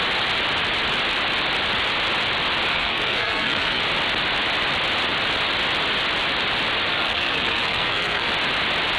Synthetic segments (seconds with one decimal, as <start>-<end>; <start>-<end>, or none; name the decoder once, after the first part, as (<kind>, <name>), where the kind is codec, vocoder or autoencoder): 2.7-3.8 (codec, SNAC); 6.9-8.3